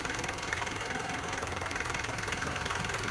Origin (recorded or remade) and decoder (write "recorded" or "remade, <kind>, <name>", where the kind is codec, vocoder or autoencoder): remade, codec, SNAC